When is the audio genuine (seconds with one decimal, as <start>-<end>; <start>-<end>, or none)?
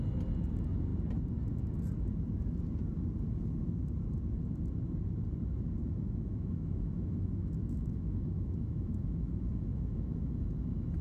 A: 0.0-5.8; 10.4-11.0